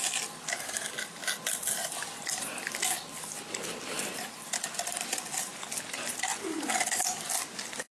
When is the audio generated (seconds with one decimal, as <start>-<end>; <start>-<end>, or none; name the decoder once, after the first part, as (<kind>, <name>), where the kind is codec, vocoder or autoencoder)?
none